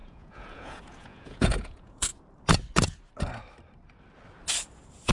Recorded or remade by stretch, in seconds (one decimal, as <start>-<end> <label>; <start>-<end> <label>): 0.0-2.1 remade; 2.1-5.1 recorded